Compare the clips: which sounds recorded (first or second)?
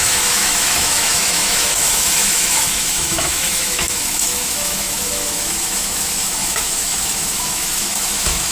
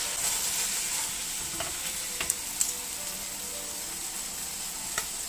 second